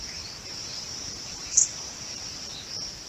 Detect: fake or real real